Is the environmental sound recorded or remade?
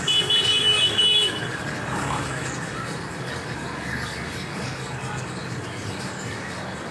remade